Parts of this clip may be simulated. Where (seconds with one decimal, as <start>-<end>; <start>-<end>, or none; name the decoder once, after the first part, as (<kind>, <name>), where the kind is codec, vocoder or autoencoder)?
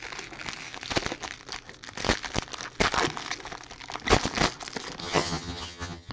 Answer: 5.0-6.1 (vocoder, HiFi-GAN)